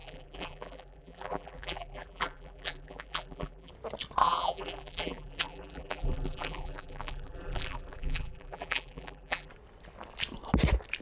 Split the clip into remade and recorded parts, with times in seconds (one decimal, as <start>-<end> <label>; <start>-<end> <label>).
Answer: 0.0-3.7 remade; 3.7-4.2 recorded; 4.2-9.5 remade; 9.5-11.0 recorded